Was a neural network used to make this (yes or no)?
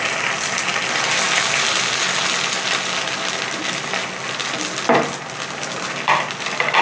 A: no